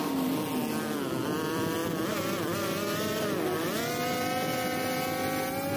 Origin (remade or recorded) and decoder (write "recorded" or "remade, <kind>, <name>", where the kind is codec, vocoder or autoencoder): recorded